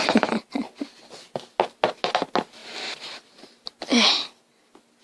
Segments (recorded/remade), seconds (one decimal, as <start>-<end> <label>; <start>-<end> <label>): 0.0-5.0 recorded

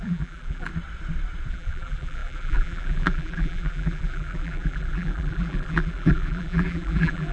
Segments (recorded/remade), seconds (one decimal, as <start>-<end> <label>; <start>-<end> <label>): 0.0-0.7 remade; 0.7-1.5 recorded; 1.5-7.3 remade